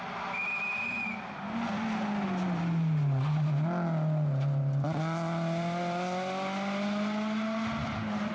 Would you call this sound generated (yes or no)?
no